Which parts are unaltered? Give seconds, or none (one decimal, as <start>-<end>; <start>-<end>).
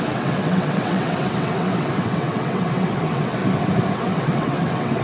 3.4-3.9